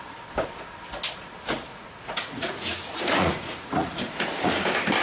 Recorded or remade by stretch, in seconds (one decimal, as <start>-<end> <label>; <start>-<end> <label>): 0.0-1.7 recorded; 1.7-4.5 remade; 4.5-5.0 recorded